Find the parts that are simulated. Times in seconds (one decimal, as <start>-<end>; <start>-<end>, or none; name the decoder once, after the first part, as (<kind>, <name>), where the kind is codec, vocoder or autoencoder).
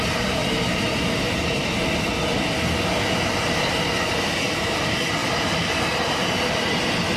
2.3-2.8 (vocoder, BigVGAN v2); 5.2-5.9